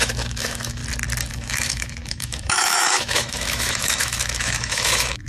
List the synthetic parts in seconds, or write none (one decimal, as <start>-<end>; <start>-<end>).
0.0-0.8; 1.3-5.3